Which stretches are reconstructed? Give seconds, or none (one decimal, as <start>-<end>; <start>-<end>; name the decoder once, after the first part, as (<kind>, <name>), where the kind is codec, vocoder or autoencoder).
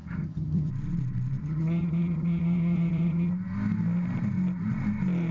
0.0-0.7 (vocoder, HiFi-GAN); 1.4-3.3